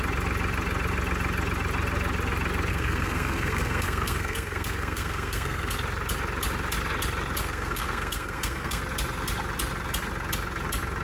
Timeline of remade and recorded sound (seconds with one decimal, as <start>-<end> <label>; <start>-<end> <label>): 0.0-2.7 recorded; 2.7-5.7 remade; 5.7-7.4 recorded; 7.4-8.8 remade; 8.8-11.0 recorded